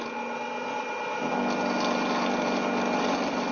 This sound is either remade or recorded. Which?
recorded